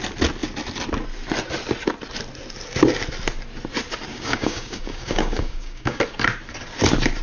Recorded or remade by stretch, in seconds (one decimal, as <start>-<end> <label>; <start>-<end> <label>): 0.0-4.1 recorded; 4.1-6.0 remade; 6.0-7.2 recorded